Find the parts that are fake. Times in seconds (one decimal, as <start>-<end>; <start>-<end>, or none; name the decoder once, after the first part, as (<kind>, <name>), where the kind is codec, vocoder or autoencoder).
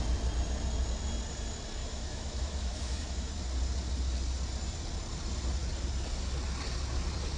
1.8-3.3 (autoencoder, DAC-VAE)